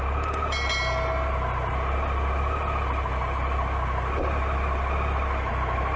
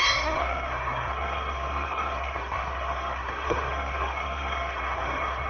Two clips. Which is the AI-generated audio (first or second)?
second